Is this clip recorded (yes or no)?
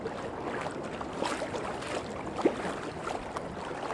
yes